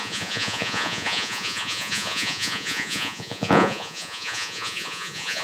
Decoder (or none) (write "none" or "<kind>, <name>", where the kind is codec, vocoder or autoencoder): vocoder, Vocos